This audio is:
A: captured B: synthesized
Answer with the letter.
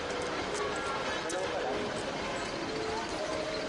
A